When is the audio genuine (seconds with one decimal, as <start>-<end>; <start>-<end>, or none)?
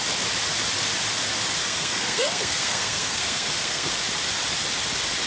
0.0-1.6; 3.9-5.3